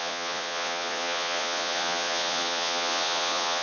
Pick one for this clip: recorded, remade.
remade